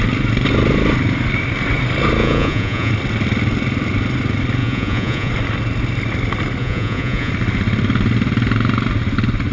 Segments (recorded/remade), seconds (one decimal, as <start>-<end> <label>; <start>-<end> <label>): 0.0-2.2 recorded; 2.2-2.9 remade; 2.9-4.6 recorded; 4.6-5.3 remade; 5.3-6.6 recorded; 6.6-7.3 remade; 7.3-9.5 recorded